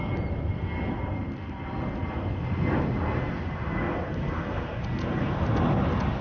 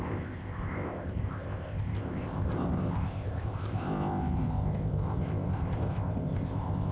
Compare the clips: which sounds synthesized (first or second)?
second